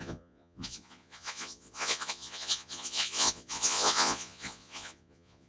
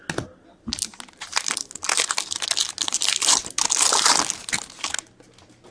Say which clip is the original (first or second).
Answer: second